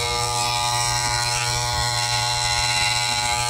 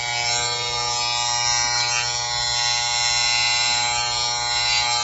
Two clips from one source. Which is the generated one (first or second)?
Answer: first